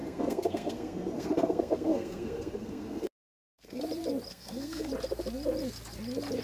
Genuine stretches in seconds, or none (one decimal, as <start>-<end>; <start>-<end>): 3.8-4.3; 4.9-6.4